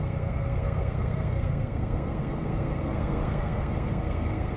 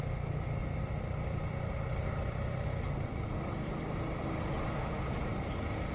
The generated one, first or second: first